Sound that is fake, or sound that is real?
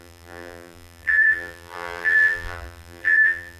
fake